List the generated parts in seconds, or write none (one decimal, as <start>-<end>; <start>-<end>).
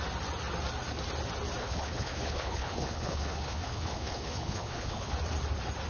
1.6-5.1